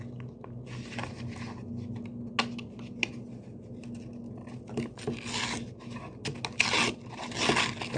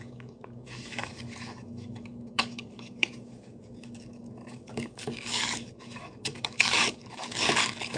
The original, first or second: first